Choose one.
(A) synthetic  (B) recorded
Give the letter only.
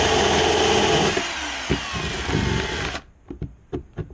B